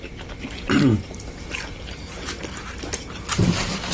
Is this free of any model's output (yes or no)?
no